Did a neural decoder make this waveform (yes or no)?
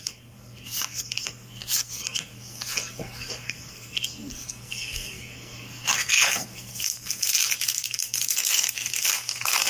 yes